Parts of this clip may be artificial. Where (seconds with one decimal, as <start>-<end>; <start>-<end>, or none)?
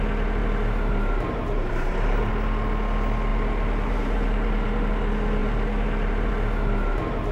0.4-2.3; 3.3-4.9; 5.4-6.3